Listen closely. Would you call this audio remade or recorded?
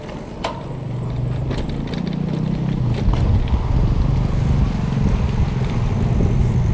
recorded